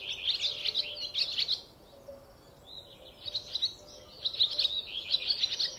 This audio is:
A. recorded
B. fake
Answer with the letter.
A